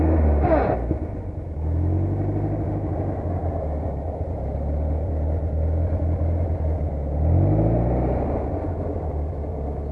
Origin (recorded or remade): recorded